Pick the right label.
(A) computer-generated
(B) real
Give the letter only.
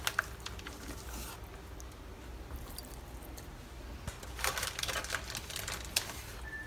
B